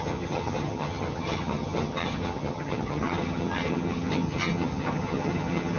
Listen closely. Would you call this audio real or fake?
fake